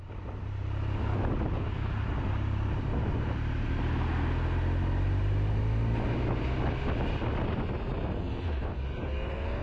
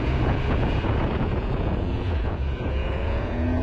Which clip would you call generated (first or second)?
second